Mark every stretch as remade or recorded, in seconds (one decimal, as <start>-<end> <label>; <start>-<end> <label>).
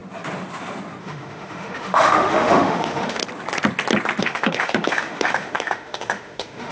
0.0-1.0 recorded; 1.0-3.2 remade; 3.2-4.2 recorded; 4.2-6.7 remade